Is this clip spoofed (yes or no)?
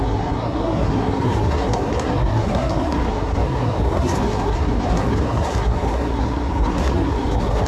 yes